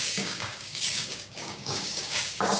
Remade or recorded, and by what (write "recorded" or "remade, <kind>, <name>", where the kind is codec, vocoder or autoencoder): remade, codec, DAC